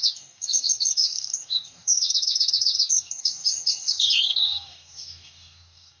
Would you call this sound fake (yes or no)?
yes